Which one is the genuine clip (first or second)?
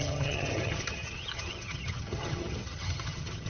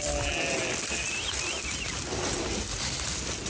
second